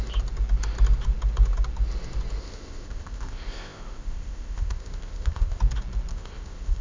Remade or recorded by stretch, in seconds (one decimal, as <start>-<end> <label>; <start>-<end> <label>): 0.0-2.4 recorded; 2.4-5.6 remade; 5.6-6.1 recorded; 6.1-6.8 remade